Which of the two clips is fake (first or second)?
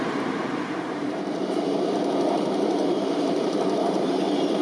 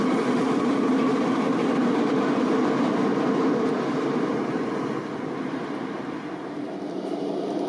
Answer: first